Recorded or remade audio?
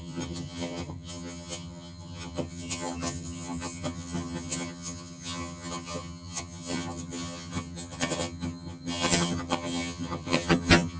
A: remade